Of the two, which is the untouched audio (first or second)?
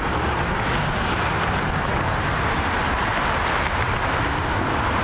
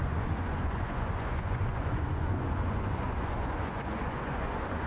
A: first